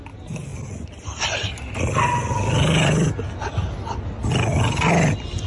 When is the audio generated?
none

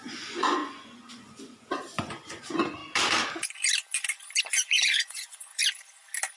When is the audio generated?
0.0-2.8 (vocoder, Vocos); 4.4-5.6

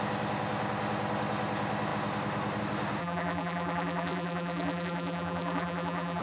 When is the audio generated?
3.0-6.2 (vocoder, BigVGAN v2)